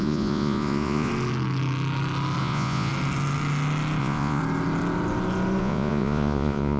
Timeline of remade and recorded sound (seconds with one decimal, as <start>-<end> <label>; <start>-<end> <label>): 0.0-1.1 remade; 1.1-2.4 recorded; 2.4-2.9 remade; 2.9-4.0 recorded; 4.0-4.4 remade; 4.4-5.6 recorded; 5.6-6.8 remade